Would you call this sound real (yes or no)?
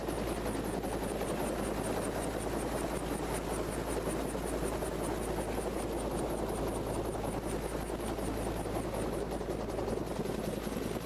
yes